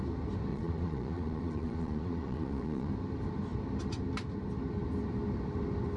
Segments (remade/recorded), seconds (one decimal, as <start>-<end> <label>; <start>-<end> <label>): 0.0-0.5 recorded; 0.5-2.9 remade; 2.9-6.0 recorded